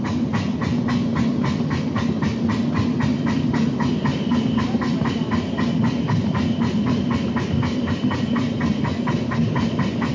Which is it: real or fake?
real